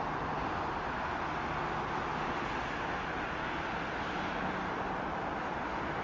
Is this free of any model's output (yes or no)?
yes